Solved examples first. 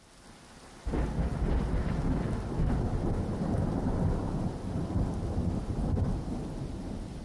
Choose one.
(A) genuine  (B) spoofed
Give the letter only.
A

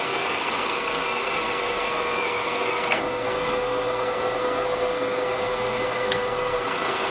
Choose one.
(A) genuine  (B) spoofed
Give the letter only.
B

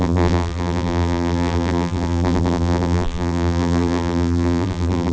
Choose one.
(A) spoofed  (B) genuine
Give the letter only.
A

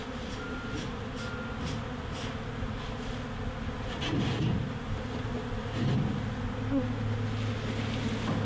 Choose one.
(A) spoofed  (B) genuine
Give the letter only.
B